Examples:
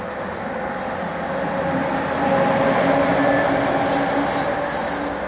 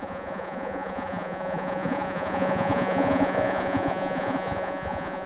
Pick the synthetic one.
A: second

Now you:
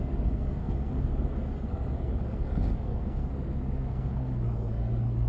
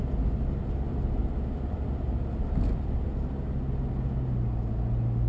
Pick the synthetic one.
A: first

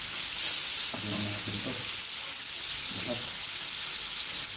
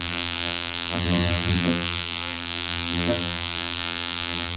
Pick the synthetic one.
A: second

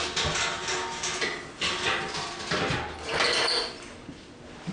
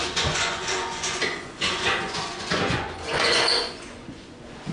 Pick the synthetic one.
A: second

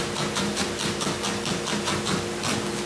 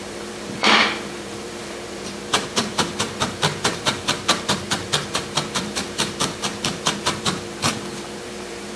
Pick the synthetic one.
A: second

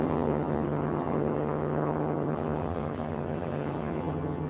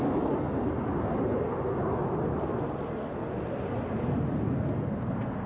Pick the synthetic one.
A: first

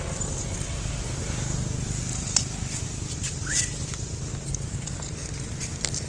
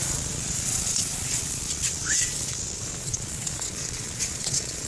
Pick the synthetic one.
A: second